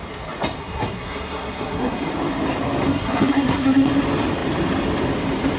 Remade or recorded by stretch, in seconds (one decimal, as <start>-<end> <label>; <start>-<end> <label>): 0.0-0.6 recorded; 0.6-2.1 remade; 2.1-2.9 recorded; 2.9-3.9 remade; 3.9-5.6 recorded